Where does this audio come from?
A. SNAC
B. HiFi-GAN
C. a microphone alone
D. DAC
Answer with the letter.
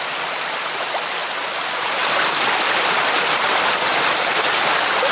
C